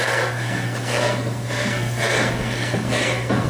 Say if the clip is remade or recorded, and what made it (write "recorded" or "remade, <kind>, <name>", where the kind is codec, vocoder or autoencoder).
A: remade, codec, SNAC